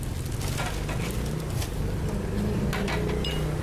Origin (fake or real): real